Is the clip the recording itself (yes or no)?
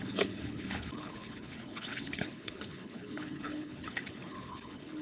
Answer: no